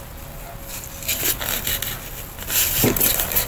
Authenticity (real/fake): real